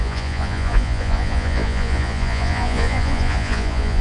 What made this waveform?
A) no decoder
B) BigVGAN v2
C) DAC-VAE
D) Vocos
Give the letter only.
D